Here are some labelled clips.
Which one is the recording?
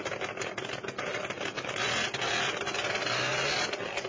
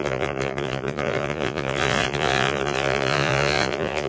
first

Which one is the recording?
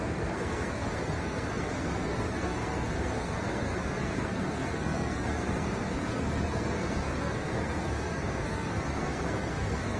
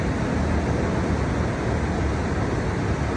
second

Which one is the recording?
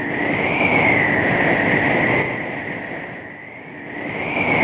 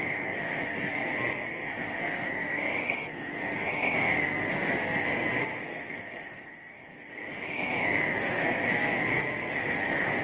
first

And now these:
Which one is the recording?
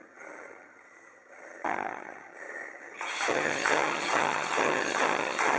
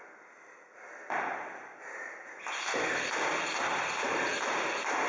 second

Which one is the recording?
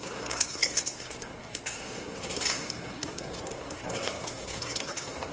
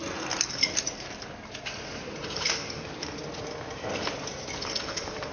second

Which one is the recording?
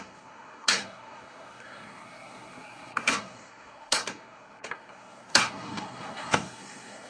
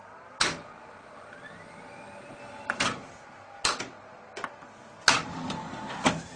second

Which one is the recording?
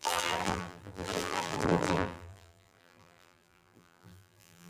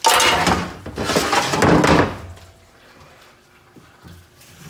second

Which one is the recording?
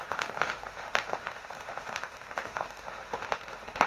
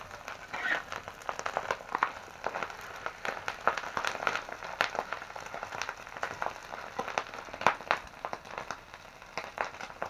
second